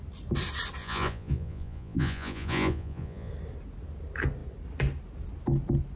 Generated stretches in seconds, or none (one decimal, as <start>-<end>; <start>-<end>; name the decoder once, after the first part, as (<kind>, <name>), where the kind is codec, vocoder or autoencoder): 0.8-3.3 (vocoder, Vocos)